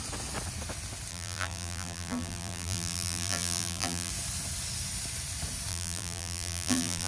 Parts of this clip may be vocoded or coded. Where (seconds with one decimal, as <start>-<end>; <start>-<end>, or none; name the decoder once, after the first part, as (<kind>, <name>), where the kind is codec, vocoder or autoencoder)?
1.1-4.1 (vocoder, BigVGAN v2); 5.7-7.1